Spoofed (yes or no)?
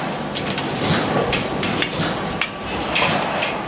no